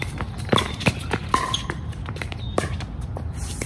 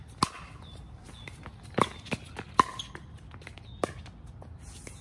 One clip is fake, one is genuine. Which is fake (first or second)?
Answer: first